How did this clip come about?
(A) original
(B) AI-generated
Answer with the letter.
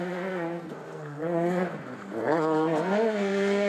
B